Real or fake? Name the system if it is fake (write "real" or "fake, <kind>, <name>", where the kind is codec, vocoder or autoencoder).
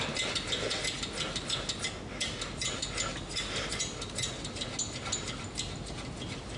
real